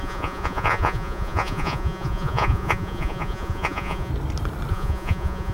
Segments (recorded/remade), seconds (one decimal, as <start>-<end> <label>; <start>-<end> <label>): 0.0-4.1 remade; 4.1-4.7 recorded; 4.7-5.5 remade